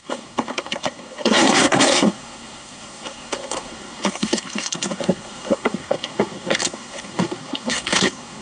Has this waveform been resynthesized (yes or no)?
yes